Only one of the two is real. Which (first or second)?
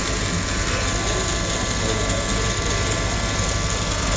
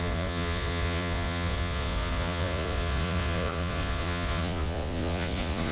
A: first